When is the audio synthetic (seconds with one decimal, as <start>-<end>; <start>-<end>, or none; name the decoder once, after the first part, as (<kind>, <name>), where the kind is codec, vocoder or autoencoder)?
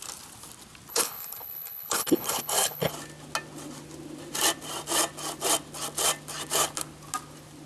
0.9-2.9 (codec, HILCodec)